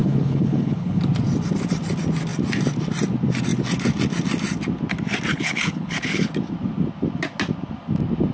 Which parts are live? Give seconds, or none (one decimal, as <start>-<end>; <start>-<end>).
1.0-5.3; 6.3-8.3